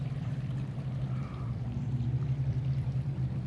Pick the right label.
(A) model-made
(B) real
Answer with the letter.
A